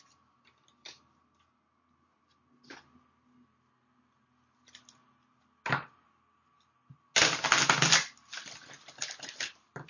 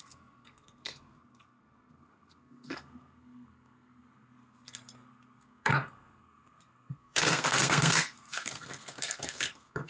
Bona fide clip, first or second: first